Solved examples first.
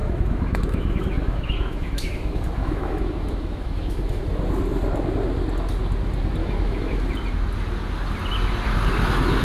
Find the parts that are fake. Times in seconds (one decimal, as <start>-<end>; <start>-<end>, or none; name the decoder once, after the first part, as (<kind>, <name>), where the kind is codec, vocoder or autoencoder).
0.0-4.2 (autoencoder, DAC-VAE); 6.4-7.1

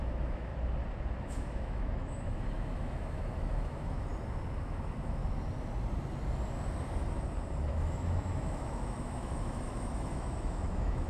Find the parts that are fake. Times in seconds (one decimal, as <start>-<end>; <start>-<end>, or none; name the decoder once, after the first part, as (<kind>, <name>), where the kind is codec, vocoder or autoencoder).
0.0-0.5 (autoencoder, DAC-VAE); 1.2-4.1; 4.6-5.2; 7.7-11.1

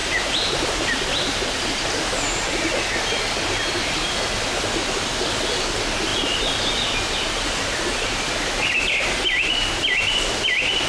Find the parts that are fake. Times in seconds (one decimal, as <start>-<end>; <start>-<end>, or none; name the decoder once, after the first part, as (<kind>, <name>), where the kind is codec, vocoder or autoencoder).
none